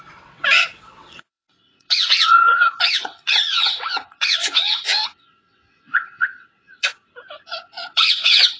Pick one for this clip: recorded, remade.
remade